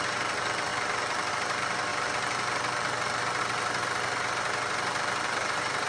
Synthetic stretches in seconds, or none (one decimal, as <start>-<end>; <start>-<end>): none